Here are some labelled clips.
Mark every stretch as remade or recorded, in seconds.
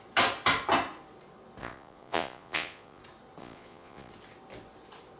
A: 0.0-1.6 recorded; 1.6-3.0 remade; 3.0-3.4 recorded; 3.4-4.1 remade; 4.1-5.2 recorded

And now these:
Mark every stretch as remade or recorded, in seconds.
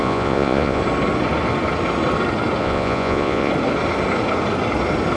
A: 0.0-0.8 remade; 0.8-2.6 recorded; 2.6-3.5 remade; 3.5-5.2 recorded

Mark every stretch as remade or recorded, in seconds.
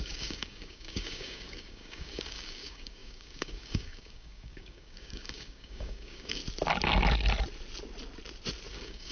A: 0.0-6.4 remade; 6.4-8.7 recorded; 8.7-9.1 remade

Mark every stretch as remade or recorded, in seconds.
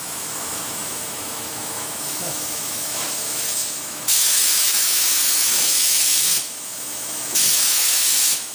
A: 0.0-8.5 remade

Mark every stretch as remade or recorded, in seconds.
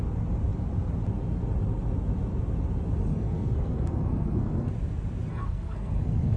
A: 0.0-3.1 recorded; 3.1-4.7 remade; 4.7-5.3 recorded; 5.3-6.4 remade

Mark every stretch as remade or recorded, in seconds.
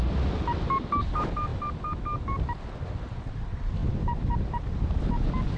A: 0.0-5.6 recorded